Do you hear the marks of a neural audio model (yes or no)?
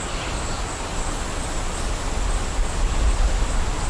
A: no